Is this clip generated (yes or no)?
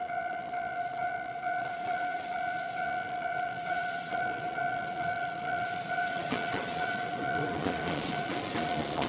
yes